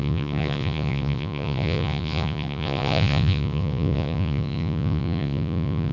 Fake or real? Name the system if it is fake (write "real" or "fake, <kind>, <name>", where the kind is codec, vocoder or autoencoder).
fake, vocoder, Vocos